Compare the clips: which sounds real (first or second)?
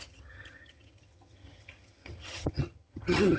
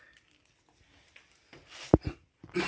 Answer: second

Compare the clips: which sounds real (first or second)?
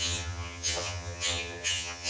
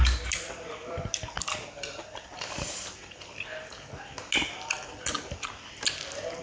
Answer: second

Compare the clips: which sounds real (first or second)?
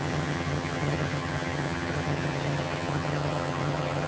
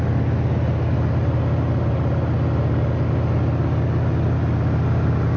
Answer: second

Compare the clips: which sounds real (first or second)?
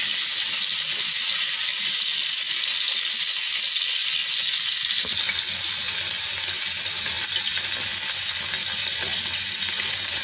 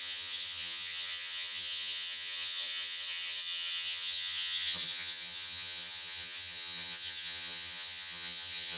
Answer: first